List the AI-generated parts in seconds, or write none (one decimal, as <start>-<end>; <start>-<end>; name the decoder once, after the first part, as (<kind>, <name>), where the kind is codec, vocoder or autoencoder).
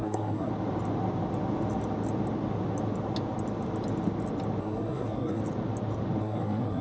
0.0-0.5 (codec, SNAC); 4.6-5.4; 6.2-6.8